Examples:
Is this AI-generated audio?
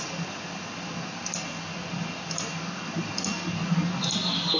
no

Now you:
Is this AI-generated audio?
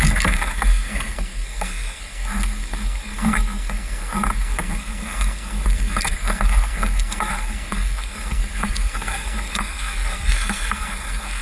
yes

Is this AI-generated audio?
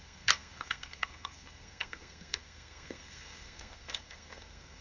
yes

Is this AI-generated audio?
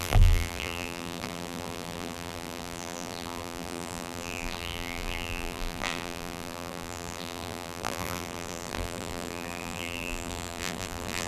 yes